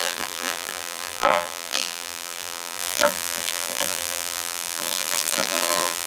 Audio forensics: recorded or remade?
remade